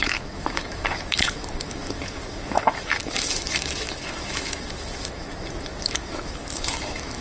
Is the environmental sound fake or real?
fake